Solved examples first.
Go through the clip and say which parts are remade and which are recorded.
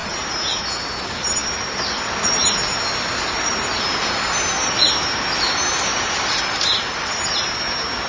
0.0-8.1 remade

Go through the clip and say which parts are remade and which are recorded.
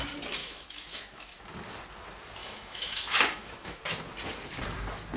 0.0-0.4 recorded; 0.4-1.4 remade; 1.4-2.4 recorded; 2.4-3.8 remade; 3.8-5.2 recorded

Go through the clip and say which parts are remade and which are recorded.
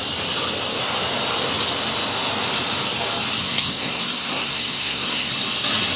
0.0-3.4 recorded; 3.4-5.3 remade; 5.3-6.0 recorded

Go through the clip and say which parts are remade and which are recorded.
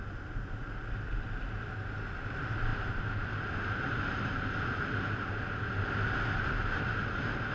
0.0-7.5 recorded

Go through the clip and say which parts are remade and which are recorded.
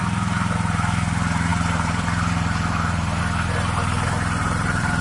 0.0-1.5 recorded; 1.5-3.2 remade; 3.2-4.4 recorded; 4.4-5.0 remade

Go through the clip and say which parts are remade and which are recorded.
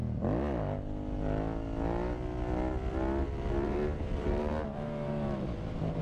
0.0-3.2 recorded; 3.2-6.0 remade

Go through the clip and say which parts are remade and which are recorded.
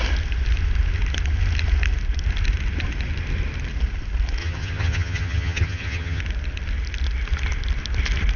0.0-4.4 recorded; 4.4-6.2 remade; 6.2-8.4 recorded